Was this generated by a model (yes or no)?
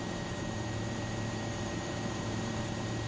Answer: yes